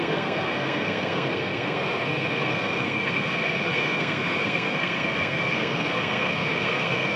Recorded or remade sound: remade